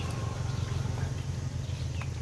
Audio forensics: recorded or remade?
recorded